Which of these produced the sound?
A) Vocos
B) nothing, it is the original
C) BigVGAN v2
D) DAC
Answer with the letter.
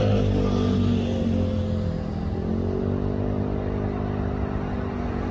B